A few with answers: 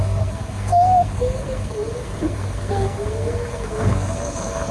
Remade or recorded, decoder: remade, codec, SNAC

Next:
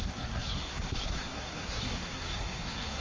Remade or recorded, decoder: remade, codec, SNAC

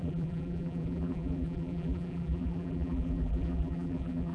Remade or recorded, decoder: remade, vocoder, BigVGAN v2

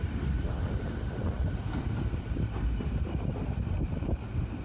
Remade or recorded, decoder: recorded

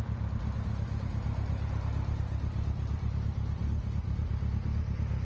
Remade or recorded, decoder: recorded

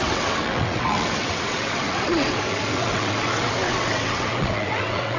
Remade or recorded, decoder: remade, vocoder, WaveNeXt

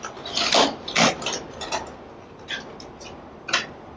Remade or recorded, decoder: recorded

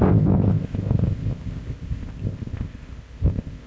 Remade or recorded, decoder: remade, codec, ZipCodec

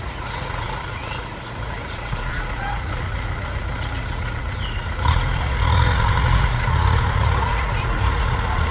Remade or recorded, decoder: remade, vocoder, Vocos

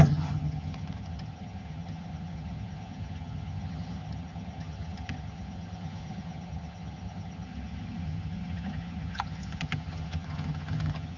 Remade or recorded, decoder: remade, vocoder, HiFi-GAN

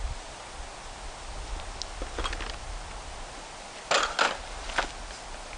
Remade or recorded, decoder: recorded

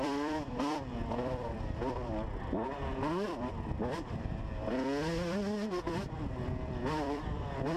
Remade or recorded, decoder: remade, vocoder, BigVGAN v2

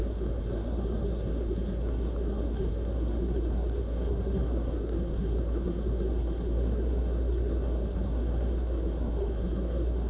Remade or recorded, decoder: remade, codec, SNAC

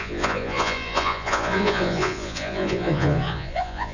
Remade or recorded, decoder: remade, vocoder, Vocos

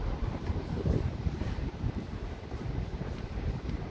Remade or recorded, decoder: remade, vocoder, BigVGAN v2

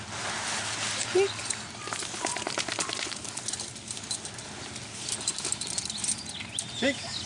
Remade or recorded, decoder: recorded